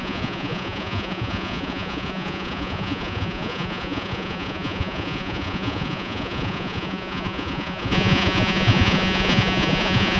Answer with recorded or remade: remade